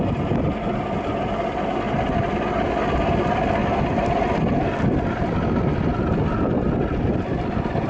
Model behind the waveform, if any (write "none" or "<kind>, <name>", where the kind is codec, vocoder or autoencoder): none